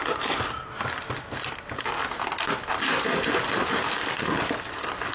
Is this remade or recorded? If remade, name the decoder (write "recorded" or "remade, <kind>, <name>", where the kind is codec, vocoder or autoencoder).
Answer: recorded